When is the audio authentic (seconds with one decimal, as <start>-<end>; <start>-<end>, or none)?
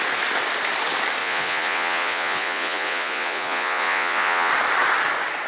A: 0.0-1.2; 4.5-5.5